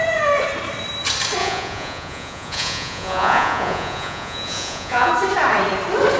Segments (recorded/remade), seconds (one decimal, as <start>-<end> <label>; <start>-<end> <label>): 0.0-1.4 recorded; 1.4-5.1 remade; 5.1-6.2 recorded